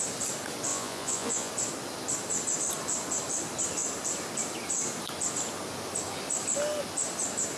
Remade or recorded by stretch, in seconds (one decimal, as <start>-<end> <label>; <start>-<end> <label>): 0.0-0.7 recorded; 0.7-1.5 remade; 1.5-7.6 recorded